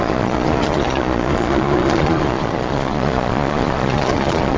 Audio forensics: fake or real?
fake